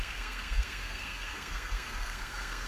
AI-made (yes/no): yes